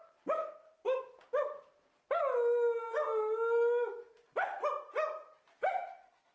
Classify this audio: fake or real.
real